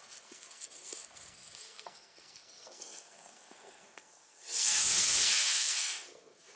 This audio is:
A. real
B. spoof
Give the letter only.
B